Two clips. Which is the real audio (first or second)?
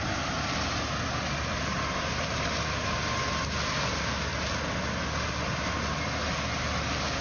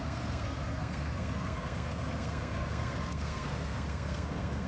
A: first